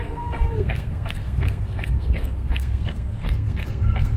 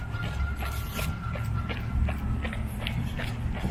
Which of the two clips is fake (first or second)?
first